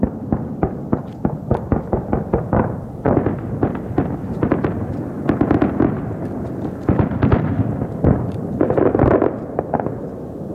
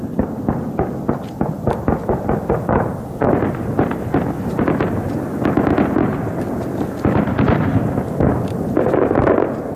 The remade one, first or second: first